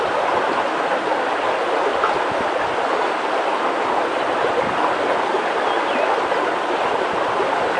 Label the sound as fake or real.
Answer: real